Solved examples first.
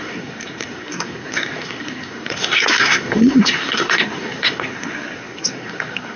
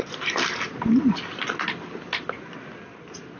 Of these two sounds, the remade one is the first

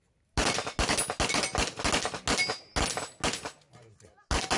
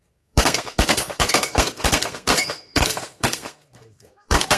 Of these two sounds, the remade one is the second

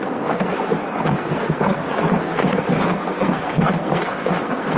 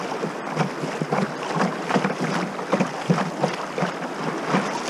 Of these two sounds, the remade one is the first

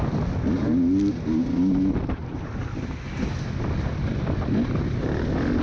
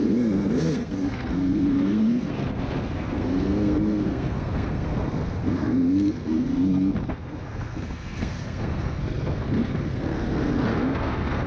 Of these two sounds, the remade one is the second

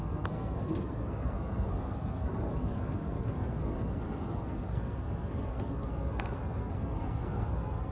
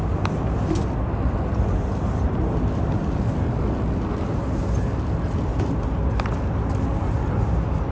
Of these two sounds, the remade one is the first